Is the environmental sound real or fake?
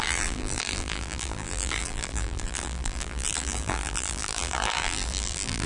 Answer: fake